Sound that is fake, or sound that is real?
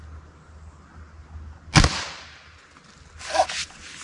real